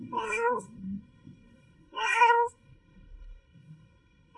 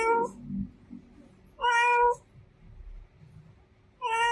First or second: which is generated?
first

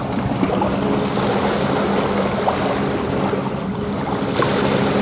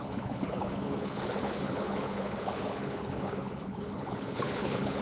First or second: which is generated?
second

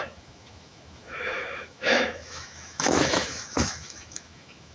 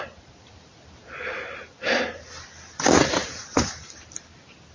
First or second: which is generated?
first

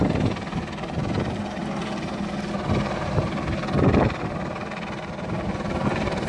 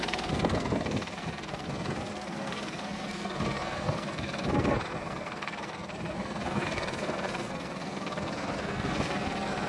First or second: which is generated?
second